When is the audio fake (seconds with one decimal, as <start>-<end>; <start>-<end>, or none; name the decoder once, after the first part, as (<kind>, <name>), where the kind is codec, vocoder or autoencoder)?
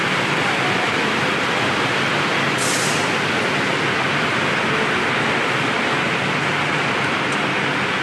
none